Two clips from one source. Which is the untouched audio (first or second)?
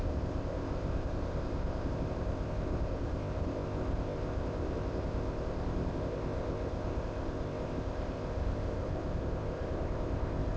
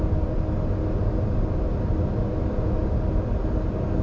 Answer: second